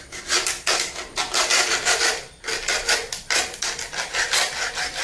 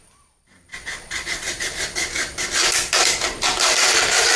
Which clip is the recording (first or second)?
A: first